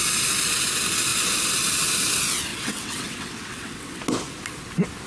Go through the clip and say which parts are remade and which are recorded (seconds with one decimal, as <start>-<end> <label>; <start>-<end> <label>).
0.0-2.5 recorded; 2.5-4.0 remade; 4.0-5.1 recorded